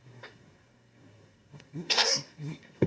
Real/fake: fake